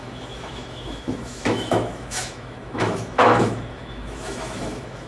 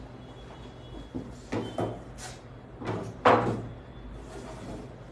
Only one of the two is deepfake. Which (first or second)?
first